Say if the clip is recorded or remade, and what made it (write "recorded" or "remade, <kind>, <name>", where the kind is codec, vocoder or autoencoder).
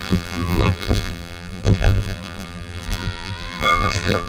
remade, vocoder, BigVGAN v2